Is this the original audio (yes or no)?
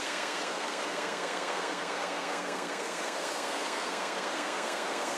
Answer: no